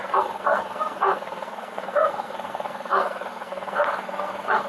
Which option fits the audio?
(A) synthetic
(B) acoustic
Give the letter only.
A